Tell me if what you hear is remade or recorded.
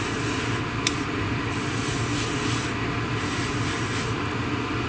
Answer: recorded